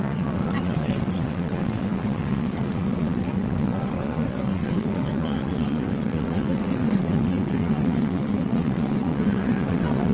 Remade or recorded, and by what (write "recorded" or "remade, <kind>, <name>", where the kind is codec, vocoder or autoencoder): remade, vocoder, WaveNeXt